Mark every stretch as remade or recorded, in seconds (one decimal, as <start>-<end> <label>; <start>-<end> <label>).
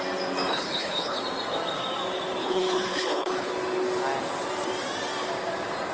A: 0.0-0.5 recorded; 0.5-1.2 remade; 1.2-2.4 recorded; 2.4-3.5 remade; 3.5-5.9 recorded